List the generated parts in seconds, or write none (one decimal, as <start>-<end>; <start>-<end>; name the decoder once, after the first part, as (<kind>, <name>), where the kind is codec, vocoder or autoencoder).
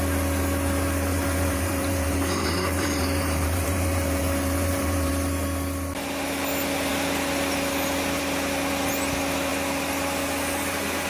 1.1-5.1 (vocoder, BigVGAN v2)